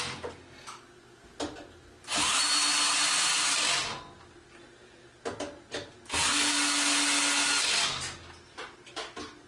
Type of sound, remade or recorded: recorded